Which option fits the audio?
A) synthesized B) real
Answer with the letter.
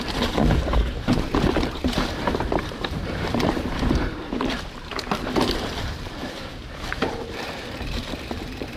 A